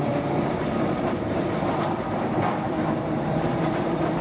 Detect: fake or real fake